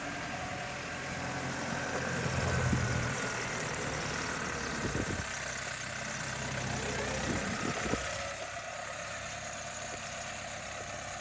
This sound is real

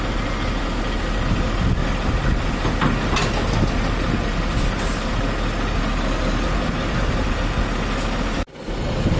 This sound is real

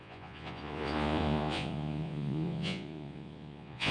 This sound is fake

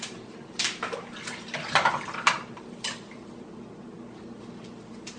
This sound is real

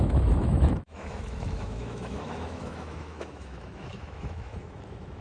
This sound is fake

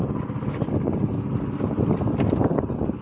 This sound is real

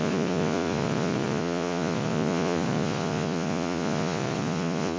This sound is fake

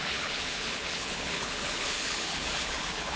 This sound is fake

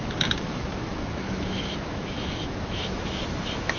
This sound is fake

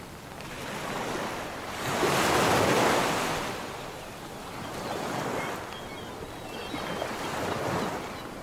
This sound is real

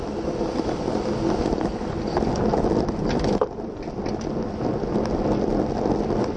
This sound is real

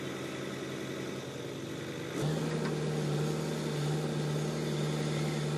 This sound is real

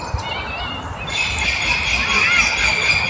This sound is real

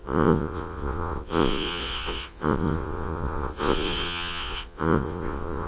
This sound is fake